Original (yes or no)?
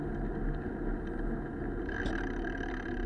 yes